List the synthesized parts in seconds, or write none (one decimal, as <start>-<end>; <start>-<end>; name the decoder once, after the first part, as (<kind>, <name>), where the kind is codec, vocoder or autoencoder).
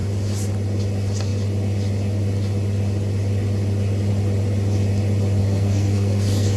5.4-6.6 (codec, SNAC)